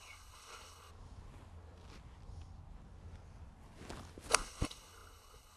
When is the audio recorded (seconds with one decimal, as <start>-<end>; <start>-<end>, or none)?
0.9-4.3